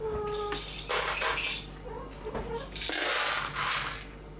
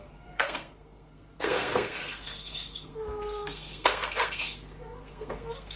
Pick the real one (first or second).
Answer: first